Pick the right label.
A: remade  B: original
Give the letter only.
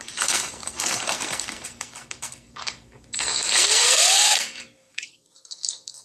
A